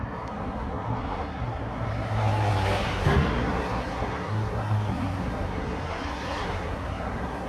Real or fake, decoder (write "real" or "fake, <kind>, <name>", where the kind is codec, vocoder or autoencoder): fake, codec, SNAC